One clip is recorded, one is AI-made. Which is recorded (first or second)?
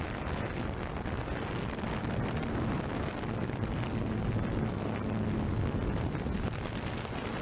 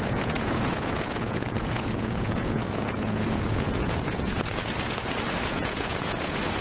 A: first